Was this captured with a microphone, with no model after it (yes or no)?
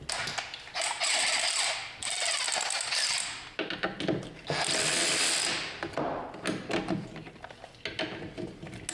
yes